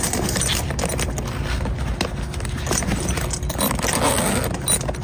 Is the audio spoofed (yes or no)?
no